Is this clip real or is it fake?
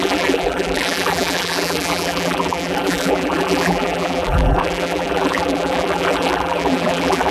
fake